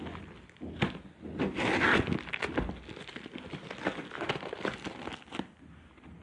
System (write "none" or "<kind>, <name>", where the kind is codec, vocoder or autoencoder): none